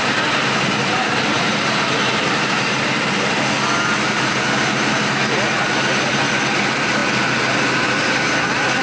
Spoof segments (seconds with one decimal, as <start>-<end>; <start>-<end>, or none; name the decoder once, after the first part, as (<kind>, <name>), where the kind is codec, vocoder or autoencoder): none